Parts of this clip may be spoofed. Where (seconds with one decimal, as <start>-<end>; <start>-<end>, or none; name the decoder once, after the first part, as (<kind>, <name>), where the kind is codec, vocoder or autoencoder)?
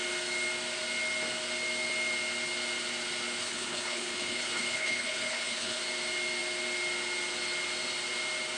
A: 3.4-5.8 (codec, HILCodec)